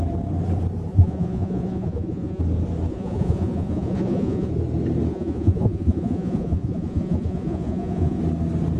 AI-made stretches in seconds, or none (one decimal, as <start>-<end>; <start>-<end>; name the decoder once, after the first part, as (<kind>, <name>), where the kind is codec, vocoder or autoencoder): 0.9-2.4 (vocoder, Vocos); 2.9-4.5; 5.1-8.2